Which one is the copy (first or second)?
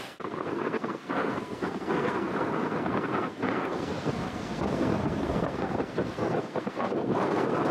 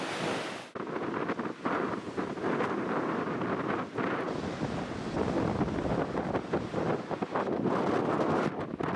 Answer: first